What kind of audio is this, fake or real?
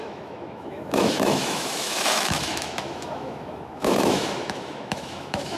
fake